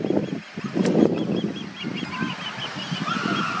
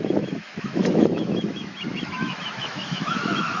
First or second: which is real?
first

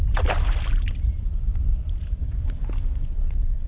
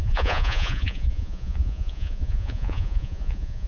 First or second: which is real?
first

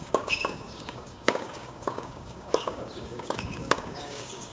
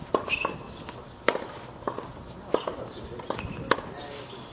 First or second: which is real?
second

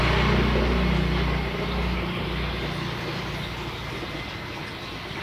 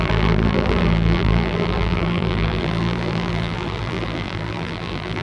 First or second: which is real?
first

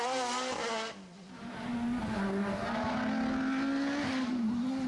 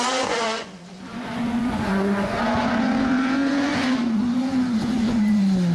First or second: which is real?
first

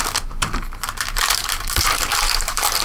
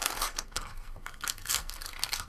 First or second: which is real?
first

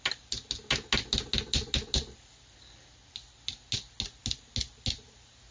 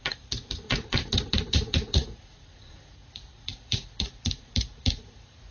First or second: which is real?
first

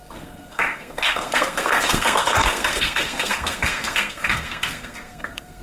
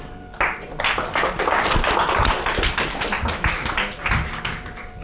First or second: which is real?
second